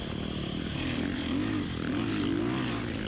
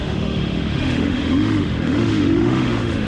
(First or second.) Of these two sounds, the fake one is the second